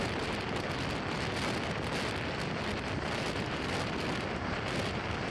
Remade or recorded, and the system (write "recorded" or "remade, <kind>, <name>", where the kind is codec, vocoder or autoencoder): recorded